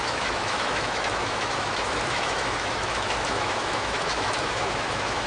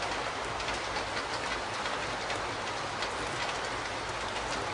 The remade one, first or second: first